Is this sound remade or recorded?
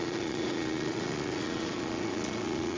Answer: remade